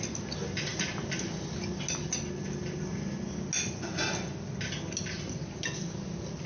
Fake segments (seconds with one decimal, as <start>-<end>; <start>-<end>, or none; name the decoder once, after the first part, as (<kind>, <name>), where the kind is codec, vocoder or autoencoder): none